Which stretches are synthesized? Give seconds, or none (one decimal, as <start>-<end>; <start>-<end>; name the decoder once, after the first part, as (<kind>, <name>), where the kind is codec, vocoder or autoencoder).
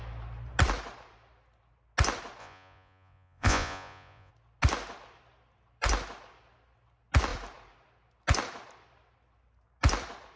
2.4-4.3 (vocoder, Vocos)